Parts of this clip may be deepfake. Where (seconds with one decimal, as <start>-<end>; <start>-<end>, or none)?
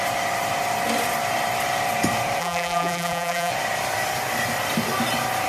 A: 2.4-3.5